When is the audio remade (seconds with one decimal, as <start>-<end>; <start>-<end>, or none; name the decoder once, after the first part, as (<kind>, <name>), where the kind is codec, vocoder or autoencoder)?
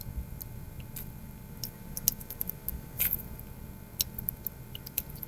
2.7-3.4 (vocoder, BigVGAN v2)